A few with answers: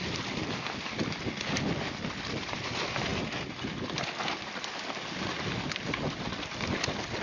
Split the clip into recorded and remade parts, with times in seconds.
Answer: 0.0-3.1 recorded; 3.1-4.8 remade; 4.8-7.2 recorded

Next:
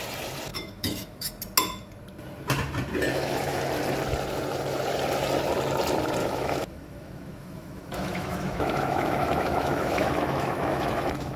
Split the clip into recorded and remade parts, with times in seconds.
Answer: 0.0-0.5 recorded; 0.5-1.3 remade; 1.3-3.1 recorded; 3.1-3.6 remade; 3.6-6.2 recorded; 6.2-11.4 remade

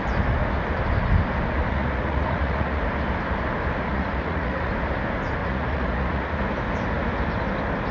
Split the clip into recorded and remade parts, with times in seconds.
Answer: 0.0-1.7 recorded; 1.7-2.8 remade; 2.8-3.9 recorded; 3.9-4.7 remade; 4.7-5.4 recorded; 5.4-6.4 remade; 6.4-7.9 recorded

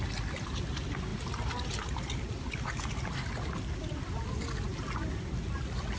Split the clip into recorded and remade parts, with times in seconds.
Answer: 0.0-6.0 recorded

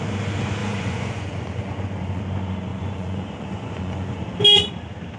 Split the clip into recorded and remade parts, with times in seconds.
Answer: 0.0-0.6 recorded; 0.6-2.2 remade; 2.2-2.7 recorded; 2.7-4.2 remade; 4.2-5.2 recorded

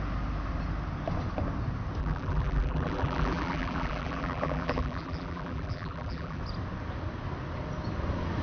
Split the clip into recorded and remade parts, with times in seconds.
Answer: 0.0-2.0 recorded; 2.0-6.4 remade; 6.4-8.4 recorded

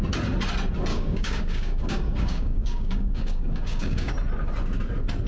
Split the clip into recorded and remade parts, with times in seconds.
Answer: 0.0-0.9 recorded; 0.9-4.1 remade; 4.1-5.3 recorded